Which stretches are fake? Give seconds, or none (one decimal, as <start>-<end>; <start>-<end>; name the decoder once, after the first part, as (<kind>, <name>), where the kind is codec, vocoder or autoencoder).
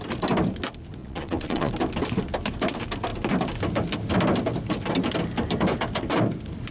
1.0-1.7 (vocoder, Vocos)